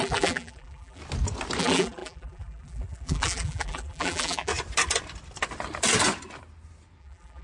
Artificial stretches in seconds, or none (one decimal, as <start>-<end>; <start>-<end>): 0.0-1.0; 1.6-4.5; 7.0-7.4